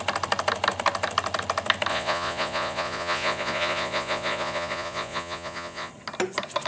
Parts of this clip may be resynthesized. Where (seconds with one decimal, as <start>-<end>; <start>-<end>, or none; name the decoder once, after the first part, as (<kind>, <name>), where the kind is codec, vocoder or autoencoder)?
1.9-5.9 (vocoder, Vocos)